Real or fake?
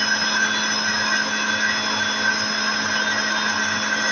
real